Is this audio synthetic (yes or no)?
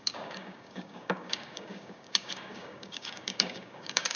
yes